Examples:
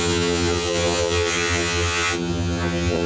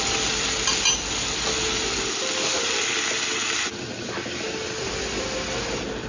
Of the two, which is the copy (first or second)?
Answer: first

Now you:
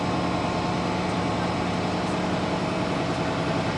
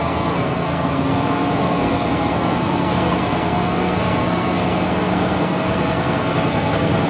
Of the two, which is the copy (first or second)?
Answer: second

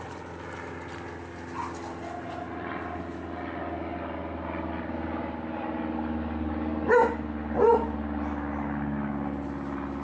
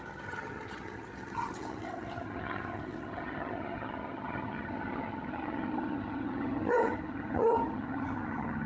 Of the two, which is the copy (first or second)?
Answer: second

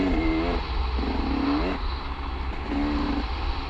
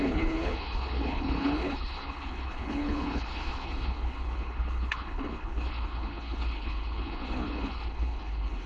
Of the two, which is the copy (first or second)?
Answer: second